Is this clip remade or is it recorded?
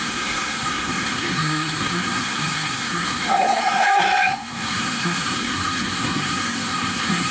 remade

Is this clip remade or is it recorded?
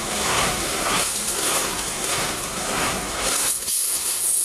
remade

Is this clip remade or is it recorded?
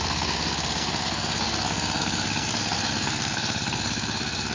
remade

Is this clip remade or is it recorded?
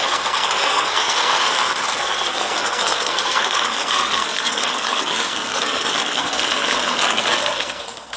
remade